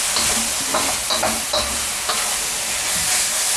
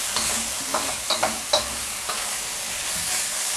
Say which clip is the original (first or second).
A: first